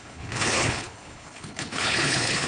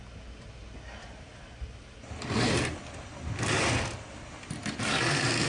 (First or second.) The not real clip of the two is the first